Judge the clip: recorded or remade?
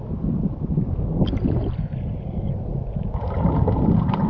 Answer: recorded